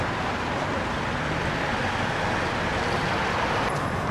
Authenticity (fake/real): real